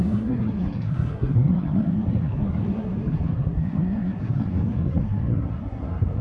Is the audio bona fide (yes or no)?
no